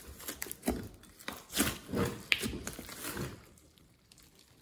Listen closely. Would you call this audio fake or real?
real